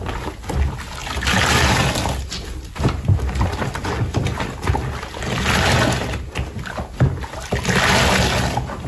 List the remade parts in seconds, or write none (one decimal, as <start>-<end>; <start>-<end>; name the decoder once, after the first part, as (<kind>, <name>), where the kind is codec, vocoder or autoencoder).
none

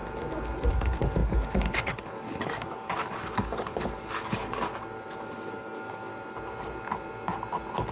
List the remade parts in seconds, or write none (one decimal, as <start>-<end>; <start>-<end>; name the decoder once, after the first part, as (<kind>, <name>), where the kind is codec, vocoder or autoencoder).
0.7-4.7 (codec, DAC); 5.2-6.1

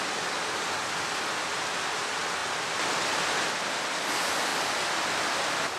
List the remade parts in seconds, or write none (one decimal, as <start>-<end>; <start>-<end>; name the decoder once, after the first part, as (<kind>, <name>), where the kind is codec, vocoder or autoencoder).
0.4-0.9 (codec, DAC)

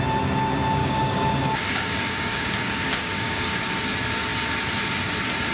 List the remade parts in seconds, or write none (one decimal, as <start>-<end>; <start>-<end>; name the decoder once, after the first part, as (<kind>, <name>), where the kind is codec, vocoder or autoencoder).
0.8-3.7 (codec, DAC)